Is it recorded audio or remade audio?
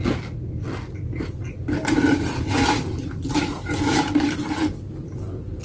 recorded